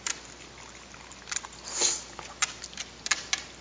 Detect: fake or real real